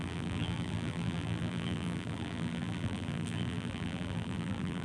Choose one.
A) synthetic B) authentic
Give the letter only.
A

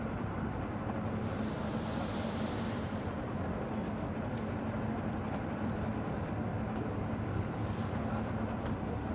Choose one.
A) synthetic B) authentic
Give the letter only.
A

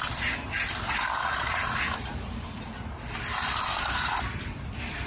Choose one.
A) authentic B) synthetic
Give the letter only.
B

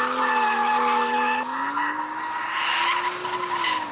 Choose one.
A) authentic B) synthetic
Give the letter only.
A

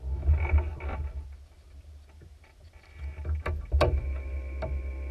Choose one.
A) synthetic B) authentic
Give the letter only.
B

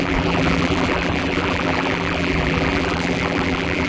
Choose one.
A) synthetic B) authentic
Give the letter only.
A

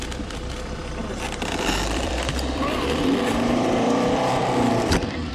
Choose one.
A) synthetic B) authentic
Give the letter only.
A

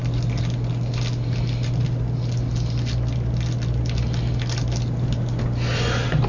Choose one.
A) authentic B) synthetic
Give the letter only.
A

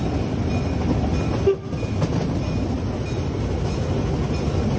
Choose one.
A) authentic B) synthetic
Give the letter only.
A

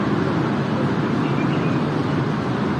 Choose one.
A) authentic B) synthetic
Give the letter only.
A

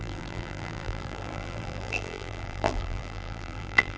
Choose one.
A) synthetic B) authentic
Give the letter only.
A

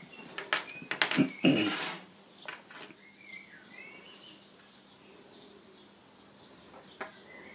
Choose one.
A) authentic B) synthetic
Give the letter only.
A